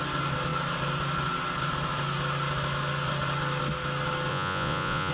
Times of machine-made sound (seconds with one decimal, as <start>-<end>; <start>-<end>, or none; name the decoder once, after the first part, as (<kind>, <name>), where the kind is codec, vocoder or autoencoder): 4.3-5.1 (vocoder, Vocos)